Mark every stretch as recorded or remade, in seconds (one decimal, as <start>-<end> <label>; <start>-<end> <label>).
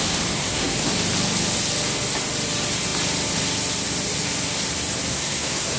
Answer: 0.0-0.4 recorded; 0.4-0.9 remade; 0.9-5.1 recorded; 5.1-5.8 remade